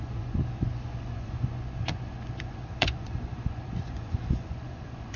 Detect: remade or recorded remade